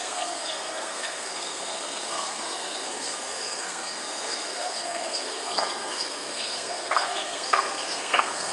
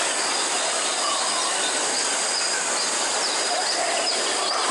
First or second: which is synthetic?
first